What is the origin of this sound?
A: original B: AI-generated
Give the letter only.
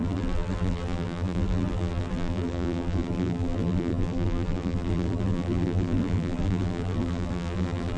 B